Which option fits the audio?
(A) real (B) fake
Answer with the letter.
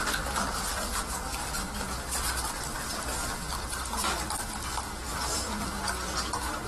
A